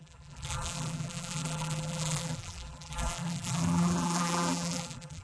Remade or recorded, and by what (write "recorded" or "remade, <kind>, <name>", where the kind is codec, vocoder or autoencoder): remade, vocoder, BigVGAN v2